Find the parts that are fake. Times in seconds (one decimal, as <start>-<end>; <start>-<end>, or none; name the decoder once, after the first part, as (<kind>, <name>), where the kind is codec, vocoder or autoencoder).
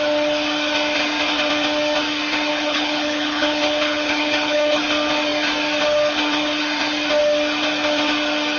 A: 2.5-4.8 (codec, HILCodec)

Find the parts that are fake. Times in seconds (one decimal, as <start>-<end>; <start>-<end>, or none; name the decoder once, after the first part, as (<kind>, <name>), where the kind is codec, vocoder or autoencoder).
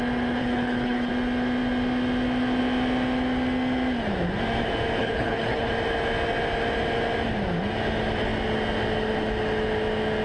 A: 0.4-1.1 (codec, HILCodec); 5.0-5.7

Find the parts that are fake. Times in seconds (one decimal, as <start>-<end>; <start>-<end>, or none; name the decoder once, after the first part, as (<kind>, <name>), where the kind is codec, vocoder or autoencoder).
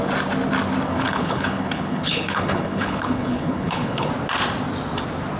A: 0.9-4.1 (codec, HILCodec)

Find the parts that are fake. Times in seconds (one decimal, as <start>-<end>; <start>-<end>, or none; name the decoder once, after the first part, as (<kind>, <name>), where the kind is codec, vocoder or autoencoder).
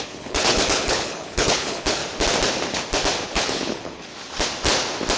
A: 0.0-2.0 (codec, HILCodec); 3.2-4.1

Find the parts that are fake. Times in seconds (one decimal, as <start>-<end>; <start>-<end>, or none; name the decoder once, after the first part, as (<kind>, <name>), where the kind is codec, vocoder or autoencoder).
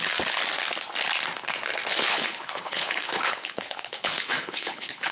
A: 1.9-5.1 (codec, HILCodec)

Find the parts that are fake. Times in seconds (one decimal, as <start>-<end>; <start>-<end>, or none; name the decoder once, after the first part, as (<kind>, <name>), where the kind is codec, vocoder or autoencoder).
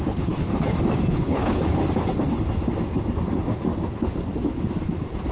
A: 0.0-0.5 (codec, HILCodec); 1.1-1.8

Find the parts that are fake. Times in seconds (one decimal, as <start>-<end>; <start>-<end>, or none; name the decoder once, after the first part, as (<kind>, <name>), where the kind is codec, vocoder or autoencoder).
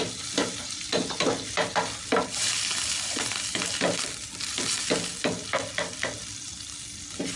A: none